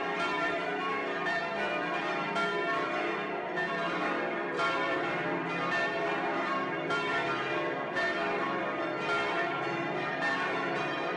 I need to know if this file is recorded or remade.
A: remade